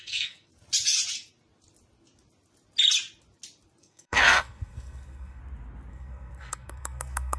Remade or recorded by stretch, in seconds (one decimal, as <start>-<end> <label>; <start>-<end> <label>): 0.0-0.5 remade; 0.5-3.8 recorded; 3.8-5.4 remade; 5.4-5.9 recorded; 5.9-7.4 remade